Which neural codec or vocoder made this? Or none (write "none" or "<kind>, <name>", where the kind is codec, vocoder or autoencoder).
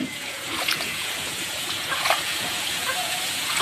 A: vocoder, Vocos